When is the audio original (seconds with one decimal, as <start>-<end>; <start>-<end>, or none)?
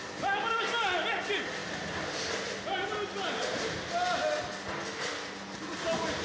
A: 0.0-6.2